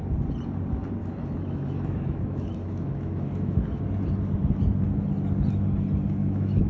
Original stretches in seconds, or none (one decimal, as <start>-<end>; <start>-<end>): 0.0-1.0; 3.8-6.2